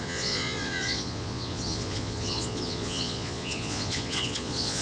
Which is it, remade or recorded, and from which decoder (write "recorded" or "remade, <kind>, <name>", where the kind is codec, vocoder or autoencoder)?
remade, vocoder, Vocos